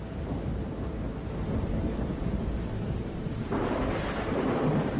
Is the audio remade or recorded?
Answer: recorded